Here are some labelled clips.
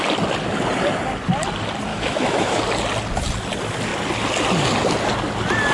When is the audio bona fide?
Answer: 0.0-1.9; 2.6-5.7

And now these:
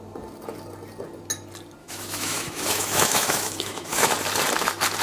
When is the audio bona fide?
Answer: 0.0-1.8; 4.1-5.0

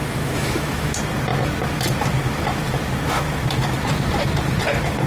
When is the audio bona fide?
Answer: 0.9-5.1

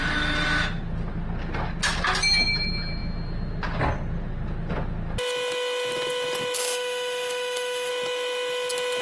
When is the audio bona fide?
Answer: 0.0-6.6; 7.9-9.0

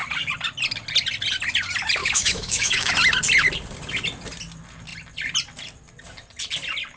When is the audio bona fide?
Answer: 0.0-2.0; 2.9-7.0